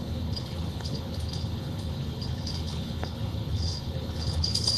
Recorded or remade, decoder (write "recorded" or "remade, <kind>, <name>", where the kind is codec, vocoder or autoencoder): remade, codec, HILCodec